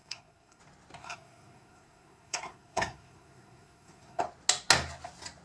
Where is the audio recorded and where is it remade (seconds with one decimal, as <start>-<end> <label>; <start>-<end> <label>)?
0.0-0.6 remade; 0.6-1.0 recorded; 1.0-4.2 remade; 4.2-5.4 recorded